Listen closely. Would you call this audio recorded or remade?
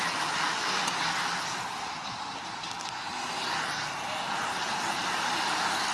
recorded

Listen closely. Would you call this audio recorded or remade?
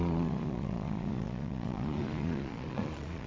remade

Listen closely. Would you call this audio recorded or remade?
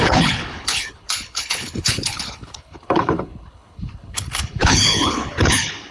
remade